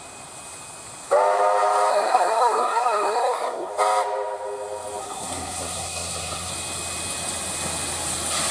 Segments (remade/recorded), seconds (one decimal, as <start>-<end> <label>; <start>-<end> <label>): 0.0-1.9 recorded; 1.9-3.7 remade; 3.7-5.0 recorded; 5.0-6.5 remade; 6.5-8.5 recorded